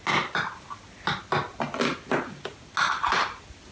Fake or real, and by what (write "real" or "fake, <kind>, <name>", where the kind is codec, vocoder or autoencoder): real